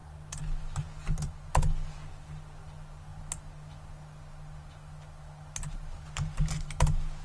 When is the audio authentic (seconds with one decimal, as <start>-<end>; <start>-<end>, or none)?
0.0-7.2